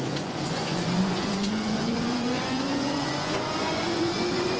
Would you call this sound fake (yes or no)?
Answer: yes